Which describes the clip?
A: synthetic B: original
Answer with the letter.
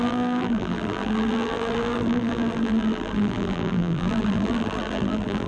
A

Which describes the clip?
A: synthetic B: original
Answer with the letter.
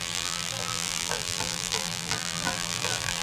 A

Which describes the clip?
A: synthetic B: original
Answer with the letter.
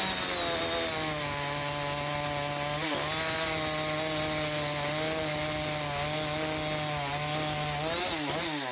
B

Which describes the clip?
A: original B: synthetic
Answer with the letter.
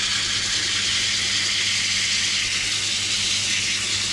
A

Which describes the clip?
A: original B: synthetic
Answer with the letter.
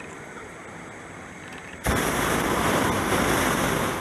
A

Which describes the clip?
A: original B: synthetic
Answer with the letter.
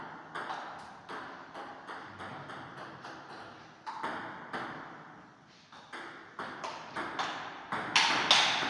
A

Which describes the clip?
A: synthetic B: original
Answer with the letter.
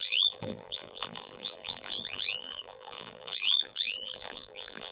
A